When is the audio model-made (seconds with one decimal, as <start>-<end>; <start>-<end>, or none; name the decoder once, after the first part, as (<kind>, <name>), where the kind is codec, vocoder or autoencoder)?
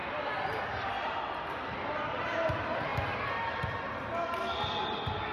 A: none